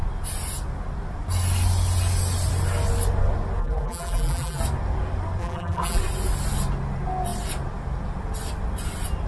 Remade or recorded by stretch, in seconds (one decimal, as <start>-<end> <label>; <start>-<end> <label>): 0.0-3.6 recorded; 3.6-4.6 remade; 4.6-5.4 recorded; 5.4-6.0 remade; 6.0-9.3 recorded